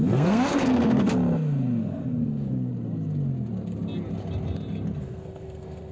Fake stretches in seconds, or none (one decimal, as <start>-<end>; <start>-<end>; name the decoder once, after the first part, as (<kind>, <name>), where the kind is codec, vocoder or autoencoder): 0.0-1.1 (codec, SNAC); 1.8-2.7; 5.0-5.9